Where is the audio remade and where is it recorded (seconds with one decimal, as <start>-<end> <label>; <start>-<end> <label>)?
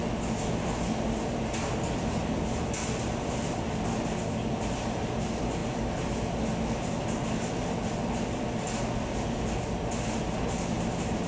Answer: 0.0-11.3 recorded